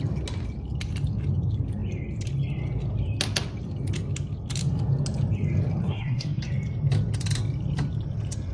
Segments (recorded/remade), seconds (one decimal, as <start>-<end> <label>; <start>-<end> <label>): 0.0-5.8 recorded; 5.8-6.4 remade; 6.4-8.5 recorded